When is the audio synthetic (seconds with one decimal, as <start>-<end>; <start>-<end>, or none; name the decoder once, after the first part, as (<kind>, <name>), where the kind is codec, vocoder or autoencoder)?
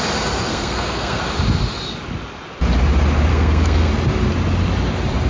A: 0.5-1.2 (codec, SNAC); 3.3-3.9